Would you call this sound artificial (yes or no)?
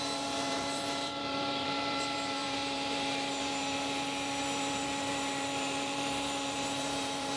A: yes